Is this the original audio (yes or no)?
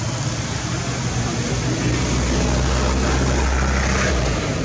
yes